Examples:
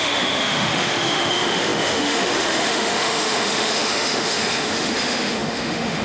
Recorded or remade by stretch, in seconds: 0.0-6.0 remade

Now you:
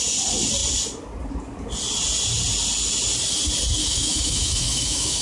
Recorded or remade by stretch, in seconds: 0.0-3.8 recorded; 3.8-5.2 remade

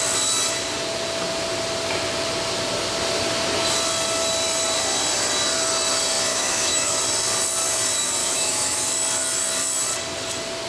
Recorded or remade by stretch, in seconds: 0.0-6.3 recorded; 6.3-7.0 remade; 7.0-8.2 recorded; 8.2-8.9 remade; 8.9-10.7 recorded

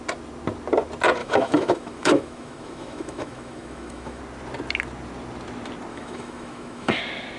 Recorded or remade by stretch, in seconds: 0.0-1.2 recorded; 1.2-4.2 remade; 4.2-5.9 recorded; 5.9-7.0 remade; 7.0-7.4 recorded

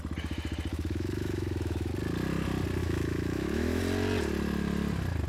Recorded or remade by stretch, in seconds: 0.0-0.7 recorded; 0.7-1.9 remade; 1.9-2.8 recorded; 2.8-3.8 remade; 3.8-5.3 recorded

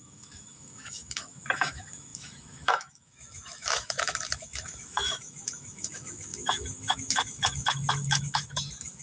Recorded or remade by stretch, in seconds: 0.0-9.0 remade

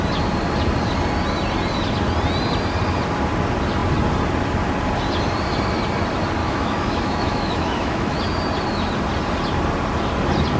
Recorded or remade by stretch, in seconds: 0.0-6.4 recorded; 6.4-8.2 remade; 8.2-10.6 recorded

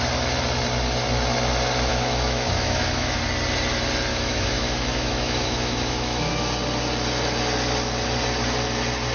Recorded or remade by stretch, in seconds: 0.0-1.9 recorded; 1.9-3.2 remade; 3.2-4.1 recorded; 4.1-6.3 remade; 6.3-9.1 recorded